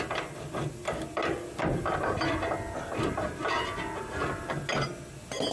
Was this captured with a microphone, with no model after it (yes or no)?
yes